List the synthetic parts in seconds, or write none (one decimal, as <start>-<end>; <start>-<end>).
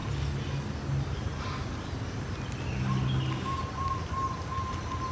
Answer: none